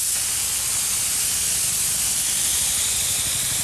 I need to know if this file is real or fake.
real